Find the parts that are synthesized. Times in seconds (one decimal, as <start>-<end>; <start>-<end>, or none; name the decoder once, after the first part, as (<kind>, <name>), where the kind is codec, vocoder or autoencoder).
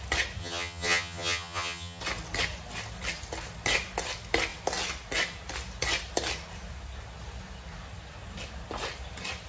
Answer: 0.4-2.0 (vocoder, HiFi-GAN)